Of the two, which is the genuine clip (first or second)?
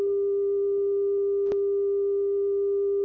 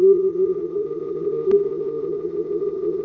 first